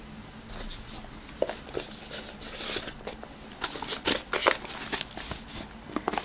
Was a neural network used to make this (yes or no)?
no